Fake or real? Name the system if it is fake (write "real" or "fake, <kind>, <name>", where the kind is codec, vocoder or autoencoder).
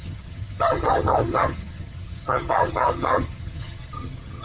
fake, vocoder, HiFi-GAN